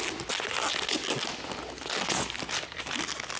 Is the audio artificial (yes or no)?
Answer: no